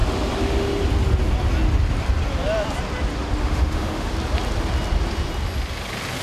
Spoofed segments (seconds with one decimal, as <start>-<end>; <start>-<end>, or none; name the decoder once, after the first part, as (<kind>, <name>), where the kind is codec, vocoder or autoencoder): 3.4-4.1 (autoencoder, DAC-VAE)